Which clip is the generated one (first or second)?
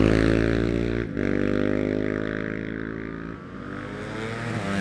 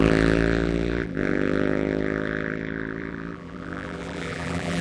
second